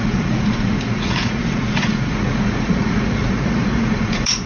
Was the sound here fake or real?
fake